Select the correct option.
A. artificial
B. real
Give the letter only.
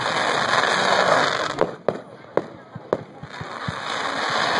B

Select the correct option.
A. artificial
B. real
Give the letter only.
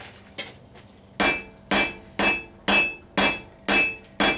B